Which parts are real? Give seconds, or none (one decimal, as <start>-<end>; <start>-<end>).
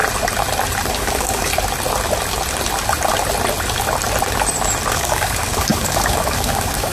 0.0-0.9; 1.5-4.9